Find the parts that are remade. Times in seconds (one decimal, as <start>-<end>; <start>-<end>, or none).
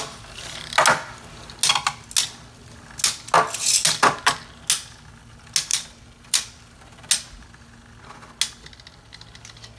5.7-6.7